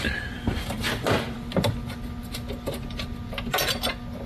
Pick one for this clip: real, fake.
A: real